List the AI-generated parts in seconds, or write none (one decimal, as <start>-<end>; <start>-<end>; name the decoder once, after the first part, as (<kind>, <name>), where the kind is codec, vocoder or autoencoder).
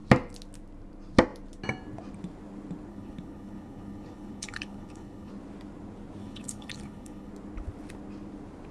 2.9-5.3 (codec, HILCodec); 6.2-7.3